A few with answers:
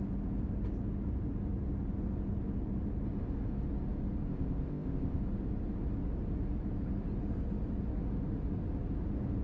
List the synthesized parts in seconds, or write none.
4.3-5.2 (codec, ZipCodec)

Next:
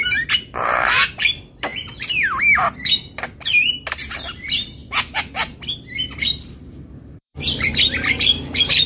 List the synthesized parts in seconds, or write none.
0.0-1.7 (vocoder, BigVGAN v2); 2.9-8.9

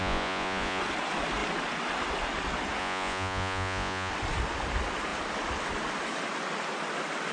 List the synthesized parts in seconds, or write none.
0.0-0.8 (vocoder, Vocos); 2.8-4.1

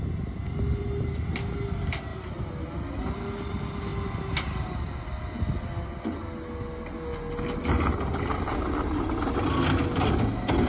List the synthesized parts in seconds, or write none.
none

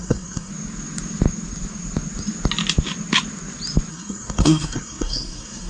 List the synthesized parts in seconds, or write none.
0.0-0.5 (codec, SNAC); 3.9-5.7

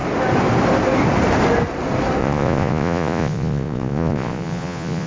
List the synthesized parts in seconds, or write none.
2.2-5.1 (vocoder, Vocos)